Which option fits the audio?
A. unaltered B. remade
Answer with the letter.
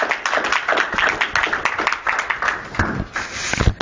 A